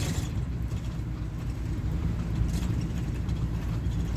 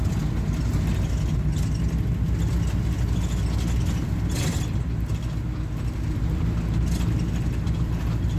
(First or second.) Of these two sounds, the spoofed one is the first